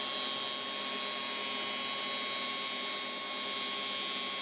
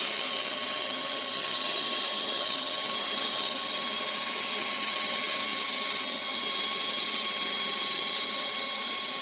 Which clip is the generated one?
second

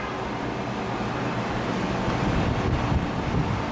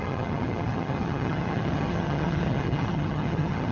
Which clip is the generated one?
second